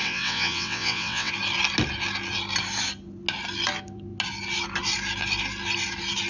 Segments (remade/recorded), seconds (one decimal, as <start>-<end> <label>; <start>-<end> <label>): 0.0-1.3 remade; 1.3-6.3 recorded